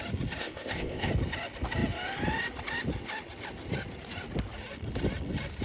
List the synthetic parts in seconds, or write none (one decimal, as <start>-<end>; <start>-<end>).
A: 0.4-1.1

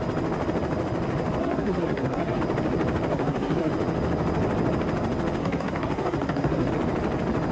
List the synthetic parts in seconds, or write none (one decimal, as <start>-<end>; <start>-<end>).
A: 1.4-2.4; 3.1-3.7; 5.4-6.7

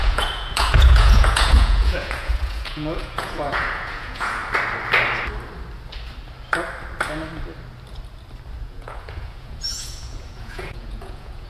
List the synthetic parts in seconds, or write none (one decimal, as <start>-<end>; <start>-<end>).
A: 0.0-4.4; 8.6-11.5

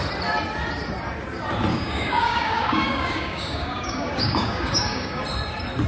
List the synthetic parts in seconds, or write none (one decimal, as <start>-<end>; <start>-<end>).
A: 1.7-5.2

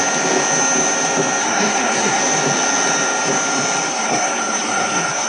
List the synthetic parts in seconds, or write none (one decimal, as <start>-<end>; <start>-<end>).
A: 1.4-2.2; 3.9-5.3

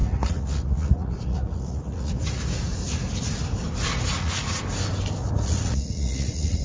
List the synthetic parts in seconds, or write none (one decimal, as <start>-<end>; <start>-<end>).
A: 0.0-2.1; 4.1-4.6; 5.2-6.6

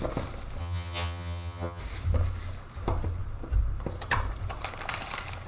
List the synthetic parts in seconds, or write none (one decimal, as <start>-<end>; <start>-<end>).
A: 0.6-1.8